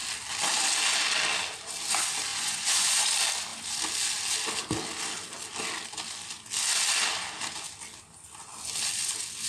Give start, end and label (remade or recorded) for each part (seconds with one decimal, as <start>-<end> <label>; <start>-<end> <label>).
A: 0.0-2.3 recorded; 2.3-3.0 remade; 3.0-9.5 recorded